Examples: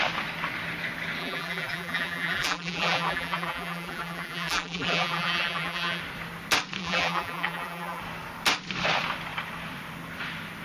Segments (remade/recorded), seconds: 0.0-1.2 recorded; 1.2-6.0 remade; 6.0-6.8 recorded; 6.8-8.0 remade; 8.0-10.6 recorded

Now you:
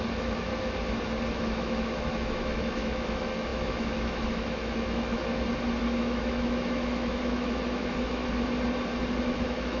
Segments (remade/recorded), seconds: 0.0-0.5 remade; 0.5-1.3 recorded; 1.3-5.2 remade; 5.2-5.8 recorded; 5.8-8.2 remade; 8.2-9.2 recorded; 9.2-9.8 remade

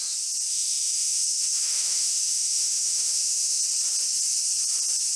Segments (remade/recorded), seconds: 0.0-0.5 recorded; 0.5-3.6 remade; 3.6-5.2 recorded

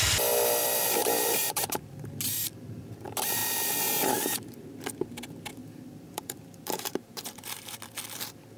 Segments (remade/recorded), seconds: 0.0-1.0 recorded; 1.0-2.1 remade; 2.1-5.6 recorded; 5.6-7.8 remade; 7.8-8.6 recorded

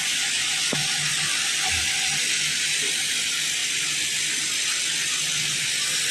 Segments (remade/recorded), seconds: 0.0-1.1 recorded; 1.1-1.8 remade; 1.8-3.6 recorded; 3.6-4.4 remade; 4.4-6.1 recorded